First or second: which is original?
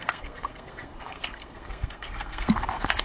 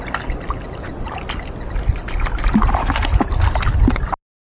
second